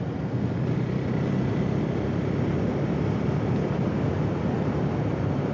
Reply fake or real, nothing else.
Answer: real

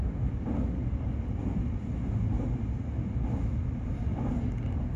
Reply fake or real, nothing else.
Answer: real